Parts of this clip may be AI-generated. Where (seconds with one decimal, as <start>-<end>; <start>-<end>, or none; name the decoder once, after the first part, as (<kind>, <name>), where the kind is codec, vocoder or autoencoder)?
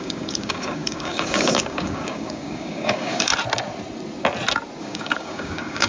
0.0-3.3 (codec, DAC); 4.8-5.9